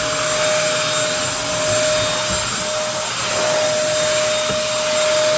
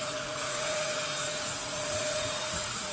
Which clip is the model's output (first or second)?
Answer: second